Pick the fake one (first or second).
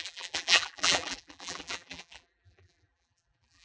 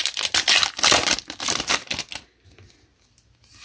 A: first